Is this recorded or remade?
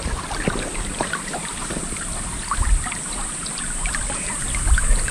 recorded